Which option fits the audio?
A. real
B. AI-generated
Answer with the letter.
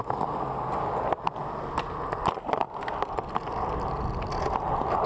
A